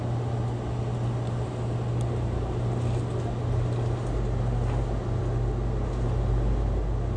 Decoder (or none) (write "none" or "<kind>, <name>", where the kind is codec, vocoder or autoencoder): none